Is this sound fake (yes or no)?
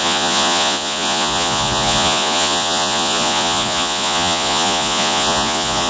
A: yes